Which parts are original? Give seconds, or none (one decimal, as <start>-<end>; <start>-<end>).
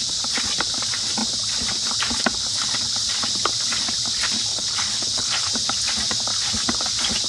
0.0-4.5; 5.5-7.3